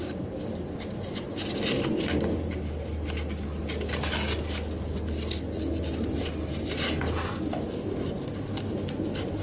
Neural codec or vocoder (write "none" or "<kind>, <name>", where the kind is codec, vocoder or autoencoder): none